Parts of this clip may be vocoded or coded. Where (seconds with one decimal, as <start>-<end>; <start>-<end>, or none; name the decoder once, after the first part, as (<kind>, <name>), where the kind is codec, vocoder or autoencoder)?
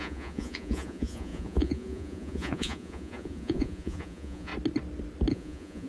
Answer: 0.0-4.5 (vocoder, Vocos); 5.3-5.9